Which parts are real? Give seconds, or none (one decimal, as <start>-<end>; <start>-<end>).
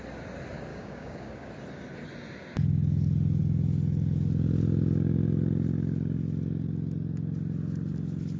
0.0-0.7; 1.5-8.4